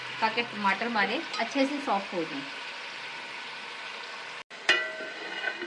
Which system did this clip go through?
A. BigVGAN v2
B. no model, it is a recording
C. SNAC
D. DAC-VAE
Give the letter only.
B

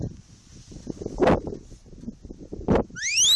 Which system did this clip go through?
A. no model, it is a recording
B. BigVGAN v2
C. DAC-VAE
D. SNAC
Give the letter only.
A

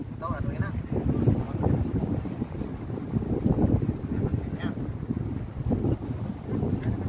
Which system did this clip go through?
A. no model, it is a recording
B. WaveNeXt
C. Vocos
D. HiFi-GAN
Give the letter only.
A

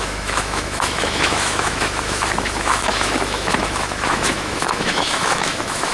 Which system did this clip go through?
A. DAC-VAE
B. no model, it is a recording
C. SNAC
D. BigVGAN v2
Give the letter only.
A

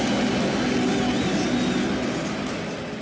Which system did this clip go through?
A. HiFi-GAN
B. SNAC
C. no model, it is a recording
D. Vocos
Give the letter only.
C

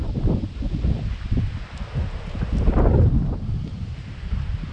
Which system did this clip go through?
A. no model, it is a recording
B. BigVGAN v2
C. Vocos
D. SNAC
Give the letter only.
A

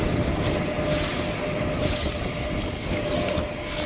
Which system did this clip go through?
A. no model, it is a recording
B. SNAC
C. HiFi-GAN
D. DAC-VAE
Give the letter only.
A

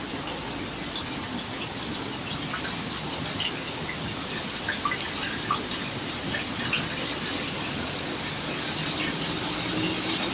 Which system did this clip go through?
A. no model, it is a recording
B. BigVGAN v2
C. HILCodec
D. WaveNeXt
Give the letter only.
A